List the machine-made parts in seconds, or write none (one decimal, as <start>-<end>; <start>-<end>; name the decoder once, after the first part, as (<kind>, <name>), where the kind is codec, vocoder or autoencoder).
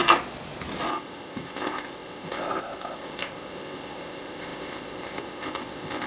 0.9-6.1 (codec, ZipCodec)